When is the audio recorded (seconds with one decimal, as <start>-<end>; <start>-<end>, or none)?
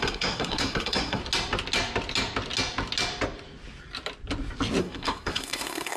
1.2-4.8